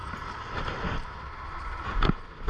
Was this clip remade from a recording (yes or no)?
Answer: no